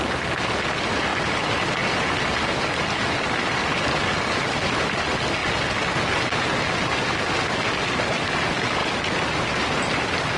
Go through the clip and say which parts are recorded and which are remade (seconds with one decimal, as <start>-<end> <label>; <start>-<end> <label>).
0.0-10.4 recorded